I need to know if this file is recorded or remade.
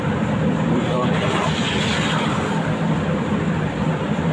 remade